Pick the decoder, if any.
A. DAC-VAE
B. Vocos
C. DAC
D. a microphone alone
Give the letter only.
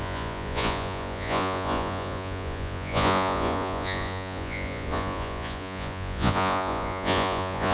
B